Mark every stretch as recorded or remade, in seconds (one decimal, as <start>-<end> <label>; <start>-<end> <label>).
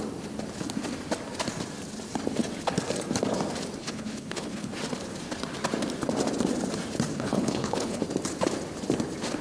0.0-3.8 recorded; 3.8-4.7 remade; 4.7-7.1 recorded; 7.1-8.0 remade; 8.0-9.4 recorded